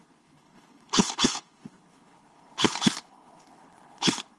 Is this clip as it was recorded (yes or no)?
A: no